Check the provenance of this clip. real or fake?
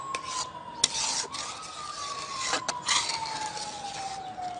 real